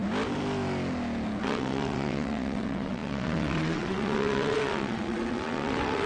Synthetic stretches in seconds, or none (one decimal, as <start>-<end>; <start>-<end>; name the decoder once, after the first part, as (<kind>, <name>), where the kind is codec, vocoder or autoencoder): 1.4-6.1 (vocoder, WaveNeXt)